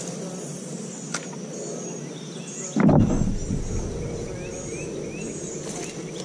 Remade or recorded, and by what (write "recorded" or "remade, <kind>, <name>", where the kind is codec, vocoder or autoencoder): recorded